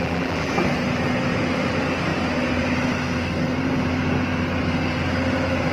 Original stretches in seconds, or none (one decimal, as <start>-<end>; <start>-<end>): 0.5-5.7